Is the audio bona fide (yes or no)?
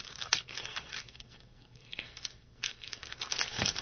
no